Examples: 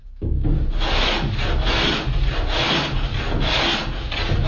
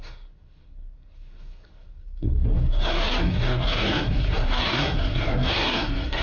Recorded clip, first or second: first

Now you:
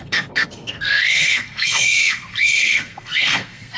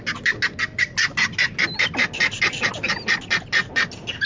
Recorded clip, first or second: second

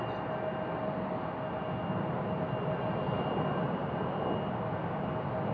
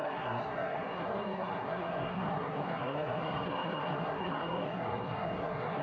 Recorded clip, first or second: first